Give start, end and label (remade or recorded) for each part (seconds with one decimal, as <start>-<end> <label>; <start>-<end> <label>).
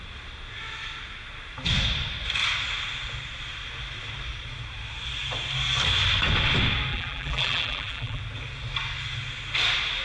0.0-6.9 recorded; 6.9-8.2 remade; 8.2-10.0 recorded